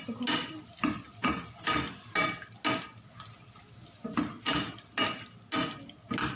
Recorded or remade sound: recorded